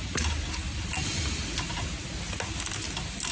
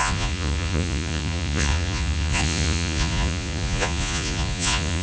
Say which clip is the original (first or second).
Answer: first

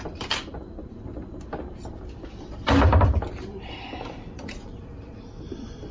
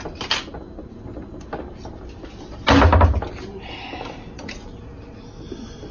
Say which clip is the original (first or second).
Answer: second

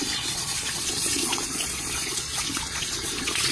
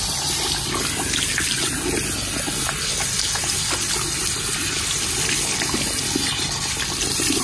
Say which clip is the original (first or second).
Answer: second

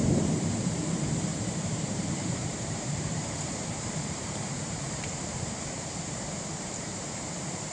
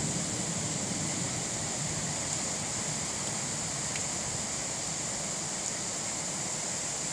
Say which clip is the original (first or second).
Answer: second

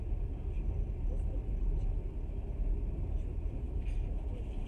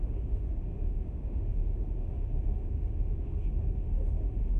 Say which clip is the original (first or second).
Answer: first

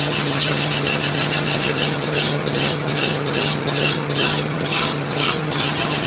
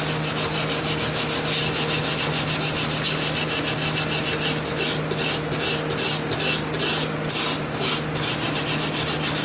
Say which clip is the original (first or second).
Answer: second